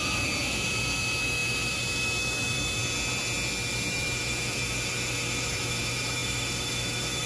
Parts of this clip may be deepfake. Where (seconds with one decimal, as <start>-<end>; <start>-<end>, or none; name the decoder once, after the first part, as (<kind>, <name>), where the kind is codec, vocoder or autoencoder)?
0.0-2.8 (autoencoder, DAC-VAE); 3.9-7.3